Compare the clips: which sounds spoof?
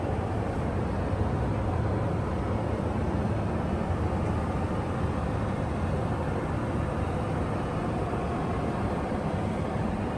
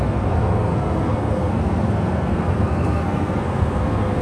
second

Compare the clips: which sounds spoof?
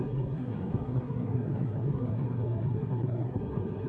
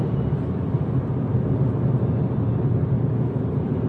first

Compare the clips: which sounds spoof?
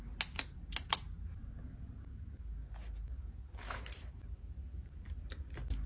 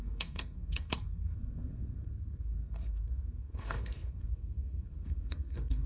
second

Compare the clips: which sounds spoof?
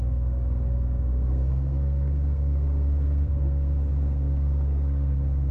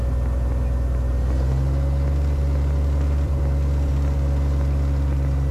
first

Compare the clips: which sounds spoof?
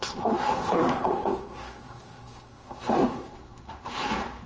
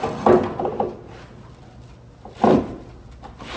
first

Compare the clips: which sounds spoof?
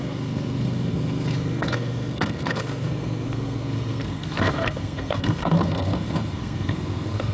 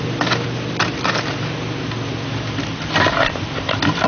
first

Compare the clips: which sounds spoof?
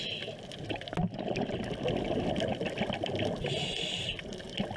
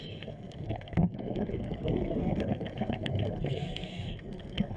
second